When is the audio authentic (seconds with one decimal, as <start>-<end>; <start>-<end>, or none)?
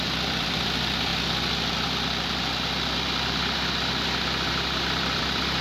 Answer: 1.1-4.5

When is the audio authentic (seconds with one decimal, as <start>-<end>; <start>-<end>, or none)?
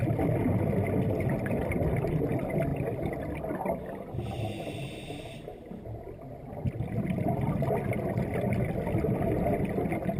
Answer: 0.0-2.7; 4.7-10.2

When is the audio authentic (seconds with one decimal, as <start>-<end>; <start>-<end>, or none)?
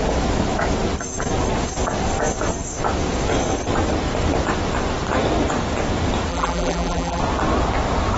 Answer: 0.0-6.3; 7.2-8.2